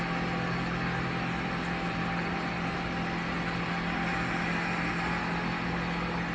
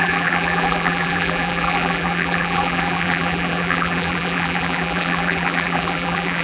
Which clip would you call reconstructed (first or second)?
second